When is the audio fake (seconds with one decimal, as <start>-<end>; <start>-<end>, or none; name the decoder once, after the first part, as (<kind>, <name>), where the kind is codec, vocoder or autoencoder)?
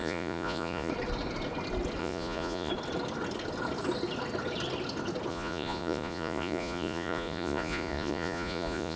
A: 0.0-0.9 (vocoder, Vocos); 2.0-2.7; 5.3-9.0